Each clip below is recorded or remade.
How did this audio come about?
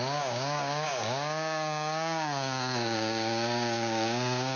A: remade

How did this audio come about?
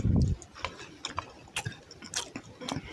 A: recorded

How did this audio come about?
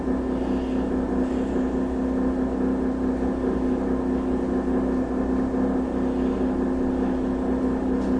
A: recorded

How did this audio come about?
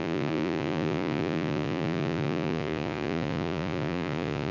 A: remade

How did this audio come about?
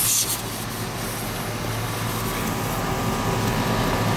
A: recorded